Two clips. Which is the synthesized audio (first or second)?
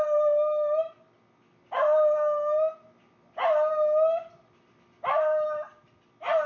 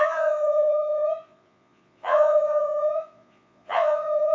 second